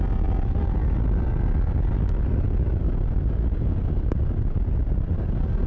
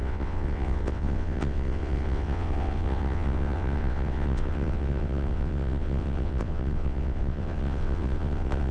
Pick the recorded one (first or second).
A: first